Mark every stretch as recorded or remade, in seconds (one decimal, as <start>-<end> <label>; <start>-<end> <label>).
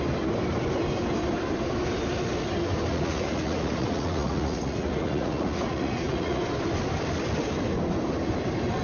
0.0-2.9 recorded; 2.9-6.4 remade; 6.4-8.8 recorded